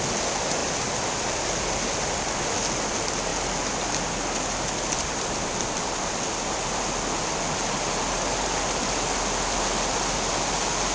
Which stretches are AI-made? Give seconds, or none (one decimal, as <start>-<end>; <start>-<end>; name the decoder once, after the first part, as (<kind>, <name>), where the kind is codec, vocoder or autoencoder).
none

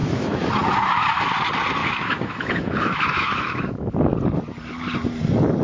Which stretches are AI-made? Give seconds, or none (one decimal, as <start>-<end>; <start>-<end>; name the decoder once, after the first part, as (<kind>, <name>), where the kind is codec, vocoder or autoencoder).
0.0-0.5 (autoencoder, DAC-VAE); 1.8-3.9

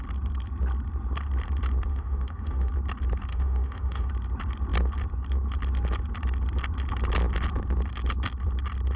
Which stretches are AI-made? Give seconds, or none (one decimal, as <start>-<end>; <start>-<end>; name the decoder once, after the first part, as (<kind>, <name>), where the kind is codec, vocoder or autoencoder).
1.9-2.7 (autoencoder, DAC-VAE); 3.3-4.1

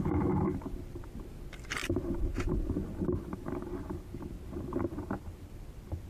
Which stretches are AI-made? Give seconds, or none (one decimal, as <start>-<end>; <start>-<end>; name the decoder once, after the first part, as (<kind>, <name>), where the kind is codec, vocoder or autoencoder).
none